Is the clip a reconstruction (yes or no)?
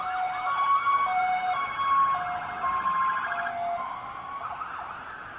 no